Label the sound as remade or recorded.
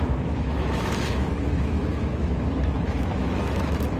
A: remade